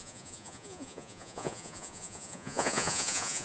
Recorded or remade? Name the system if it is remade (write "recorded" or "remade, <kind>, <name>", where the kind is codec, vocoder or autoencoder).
remade, vocoder, Vocos